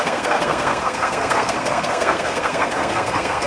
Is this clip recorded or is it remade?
remade